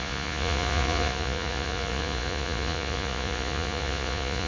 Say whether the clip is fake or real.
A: fake